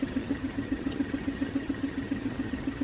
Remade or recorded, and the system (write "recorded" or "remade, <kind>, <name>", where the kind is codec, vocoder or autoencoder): remade, vocoder, HiFi-GAN